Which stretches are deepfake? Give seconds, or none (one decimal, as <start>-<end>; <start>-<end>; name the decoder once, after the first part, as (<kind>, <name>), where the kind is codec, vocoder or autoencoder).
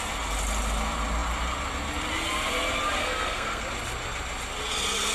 3.0-3.6 (codec, SNAC)